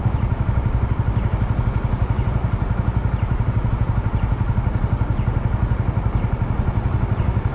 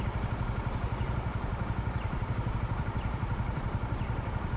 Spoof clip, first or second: second